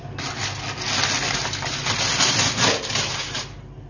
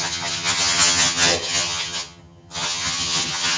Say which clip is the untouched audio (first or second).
first